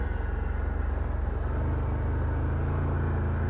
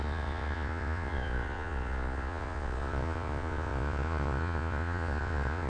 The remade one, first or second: second